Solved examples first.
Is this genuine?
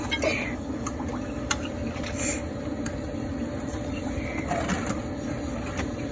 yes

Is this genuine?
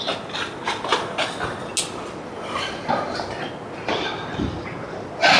yes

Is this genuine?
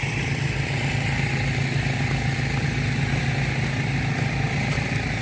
yes